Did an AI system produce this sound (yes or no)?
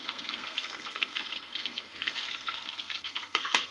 yes